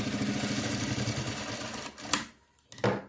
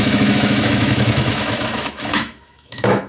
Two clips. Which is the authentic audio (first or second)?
first